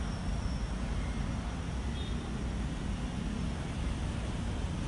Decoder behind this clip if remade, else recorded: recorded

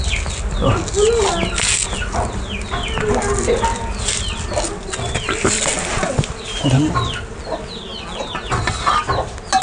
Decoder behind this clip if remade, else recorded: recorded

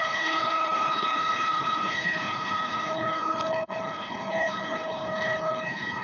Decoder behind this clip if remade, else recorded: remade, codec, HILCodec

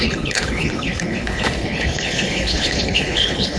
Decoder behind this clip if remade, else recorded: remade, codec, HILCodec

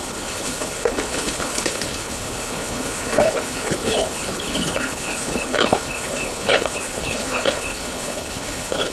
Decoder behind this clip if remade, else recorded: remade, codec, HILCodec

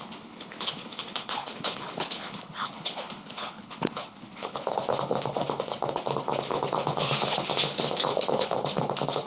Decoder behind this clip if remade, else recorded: remade, codec, HILCodec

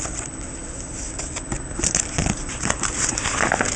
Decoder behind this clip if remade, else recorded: recorded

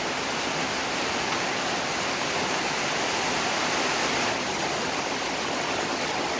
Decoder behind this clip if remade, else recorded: recorded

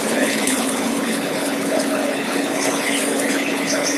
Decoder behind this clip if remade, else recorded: remade, codec, HILCodec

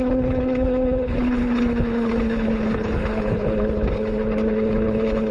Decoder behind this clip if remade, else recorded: remade, codec, HILCodec